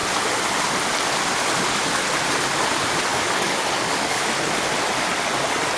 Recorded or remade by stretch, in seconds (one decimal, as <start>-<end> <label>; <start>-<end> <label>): 0.0-3.1 recorded; 3.1-4.2 remade; 4.2-5.8 recorded